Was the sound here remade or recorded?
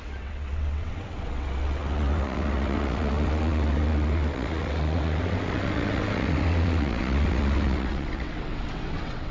remade